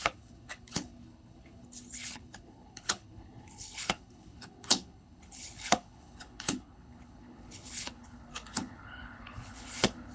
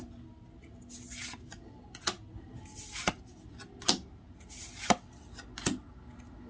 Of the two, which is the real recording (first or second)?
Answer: second